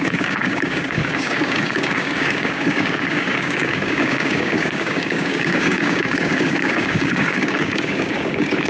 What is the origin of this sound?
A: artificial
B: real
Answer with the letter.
A